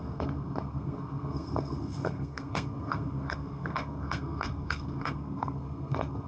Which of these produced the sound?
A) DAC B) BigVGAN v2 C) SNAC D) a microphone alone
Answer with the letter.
C